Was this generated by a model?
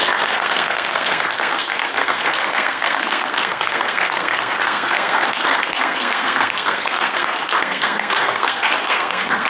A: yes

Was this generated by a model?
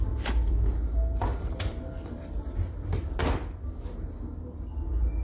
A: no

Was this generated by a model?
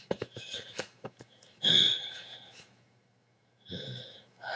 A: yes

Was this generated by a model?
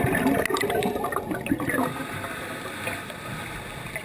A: no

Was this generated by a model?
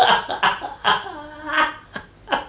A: no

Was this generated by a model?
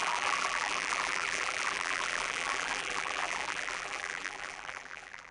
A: yes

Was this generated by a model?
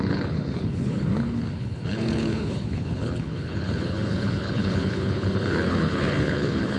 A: yes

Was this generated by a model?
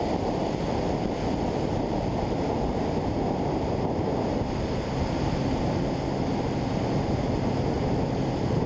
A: no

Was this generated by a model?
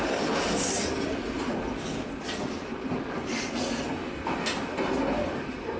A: no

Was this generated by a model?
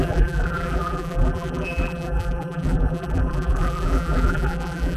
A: yes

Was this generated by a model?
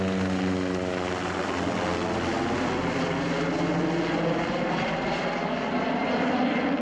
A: no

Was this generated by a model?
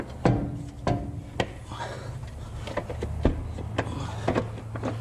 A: no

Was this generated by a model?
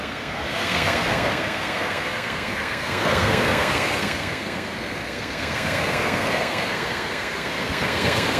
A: yes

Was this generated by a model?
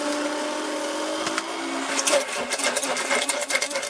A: no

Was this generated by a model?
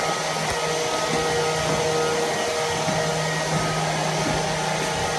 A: no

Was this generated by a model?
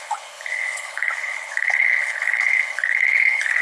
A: yes